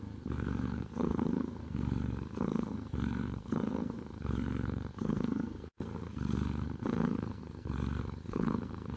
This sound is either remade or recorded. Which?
remade